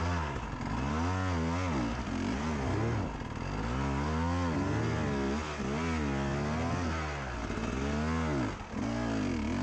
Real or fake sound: real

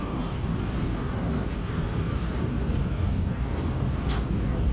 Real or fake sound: fake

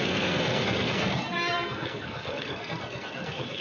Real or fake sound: fake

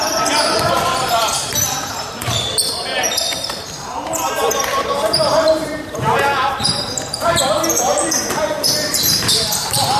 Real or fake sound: fake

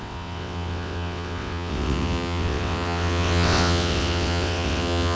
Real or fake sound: fake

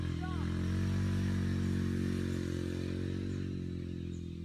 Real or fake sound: real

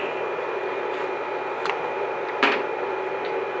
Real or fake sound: real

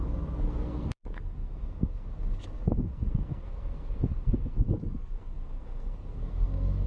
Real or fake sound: fake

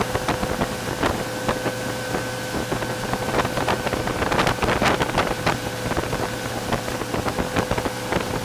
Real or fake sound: real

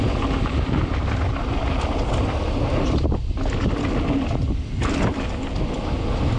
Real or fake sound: real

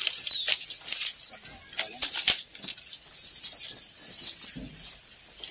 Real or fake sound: real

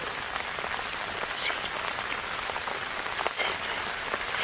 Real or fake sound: real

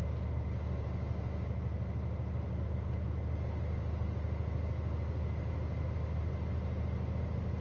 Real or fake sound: real